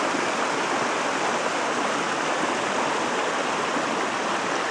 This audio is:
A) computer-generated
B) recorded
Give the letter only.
B